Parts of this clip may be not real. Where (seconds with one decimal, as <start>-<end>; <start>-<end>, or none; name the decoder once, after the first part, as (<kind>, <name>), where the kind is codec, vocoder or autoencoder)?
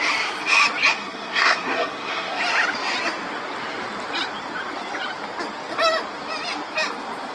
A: 0.9-2.4 (codec, SNAC)